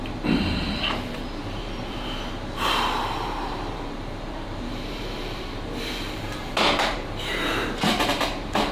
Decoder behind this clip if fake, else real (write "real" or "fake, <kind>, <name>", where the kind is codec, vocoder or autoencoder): fake, vocoder, BigVGAN v2